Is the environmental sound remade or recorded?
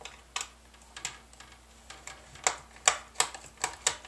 recorded